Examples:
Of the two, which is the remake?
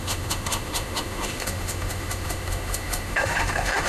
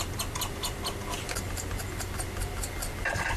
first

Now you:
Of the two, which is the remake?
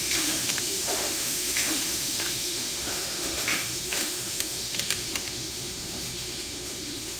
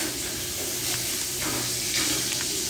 first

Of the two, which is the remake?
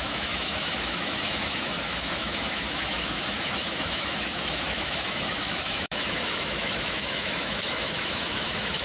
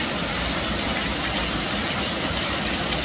first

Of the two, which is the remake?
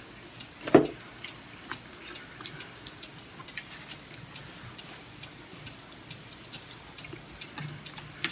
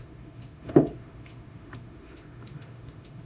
second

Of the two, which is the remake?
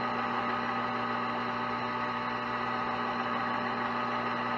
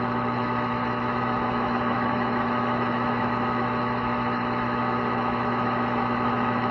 second